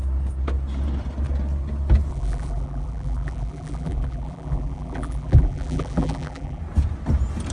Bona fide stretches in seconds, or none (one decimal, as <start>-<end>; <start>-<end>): 0.0-2.1; 6.6-7.5